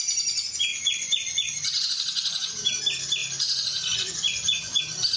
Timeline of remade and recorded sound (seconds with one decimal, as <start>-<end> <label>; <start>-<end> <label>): 0.0-0.7 recorded; 0.7-2.7 remade; 2.7-3.2 recorded; 3.2-4.8 remade; 4.8-5.2 recorded